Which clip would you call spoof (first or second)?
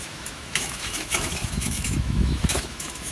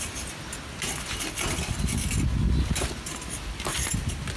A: first